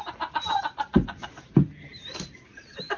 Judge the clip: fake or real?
real